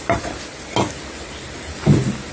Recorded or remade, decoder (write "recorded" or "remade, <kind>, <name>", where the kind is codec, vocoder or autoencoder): recorded